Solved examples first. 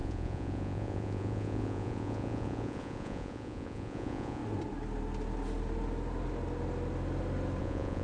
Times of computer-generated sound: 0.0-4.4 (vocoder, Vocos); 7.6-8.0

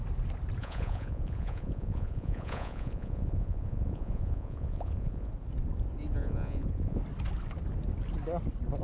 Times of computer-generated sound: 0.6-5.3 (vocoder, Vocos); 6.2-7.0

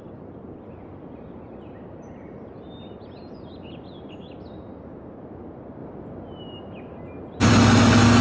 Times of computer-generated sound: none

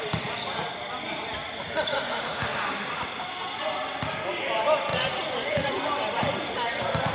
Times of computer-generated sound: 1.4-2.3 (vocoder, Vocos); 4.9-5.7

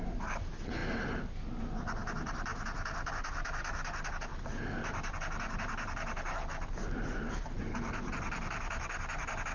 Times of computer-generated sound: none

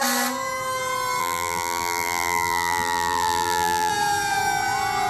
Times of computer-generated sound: 1.2-3.9 (vocoder, BigVGAN v2)

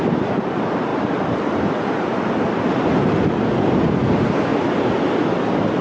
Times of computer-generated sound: none